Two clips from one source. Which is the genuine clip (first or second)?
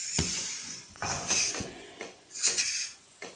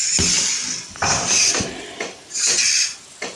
second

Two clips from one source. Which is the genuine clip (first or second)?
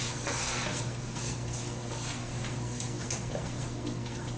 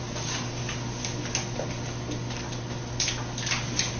second